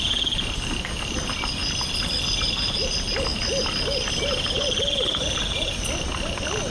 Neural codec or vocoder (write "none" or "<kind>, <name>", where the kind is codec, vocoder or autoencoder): none